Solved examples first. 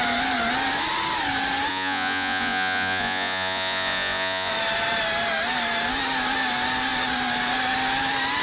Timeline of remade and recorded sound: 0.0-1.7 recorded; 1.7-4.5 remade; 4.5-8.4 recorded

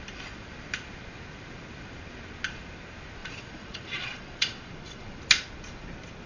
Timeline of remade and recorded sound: 0.0-3.2 recorded; 3.2-5.2 remade; 5.2-6.3 recorded

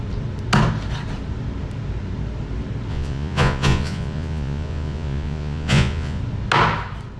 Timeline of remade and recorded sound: 0.0-2.9 recorded; 2.9-6.2 remade; 6.2-7.2 recorded

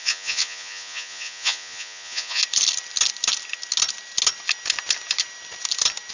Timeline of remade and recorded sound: 0.0-2.4 remade; 2.4-6.1 recorded